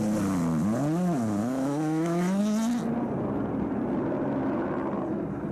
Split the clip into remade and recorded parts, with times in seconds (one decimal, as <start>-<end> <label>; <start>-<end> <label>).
0.0-1.4 recorded; 1.4-2.4 remade; 2.4-5.5 recorded